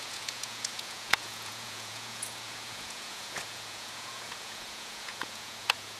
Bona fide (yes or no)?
no